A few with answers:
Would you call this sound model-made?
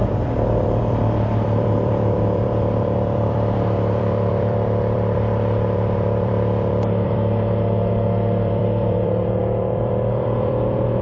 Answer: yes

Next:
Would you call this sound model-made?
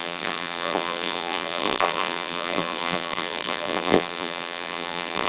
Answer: yes